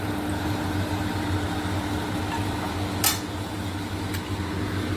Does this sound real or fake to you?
real